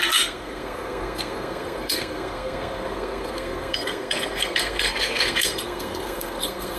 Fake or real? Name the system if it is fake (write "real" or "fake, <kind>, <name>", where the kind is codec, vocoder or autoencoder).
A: fake, codec, SNAC